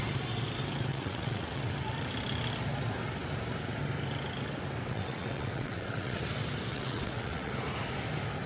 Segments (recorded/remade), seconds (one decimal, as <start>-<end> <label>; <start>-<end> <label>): 0.0-0.9 recorded; 0.9-1.6 remade; 1.6-4.9 recorded; 4.9-6.2 remade; 6.2-6.7 recorded; 6.7-7.5 remade; 7.5-8.5 recorded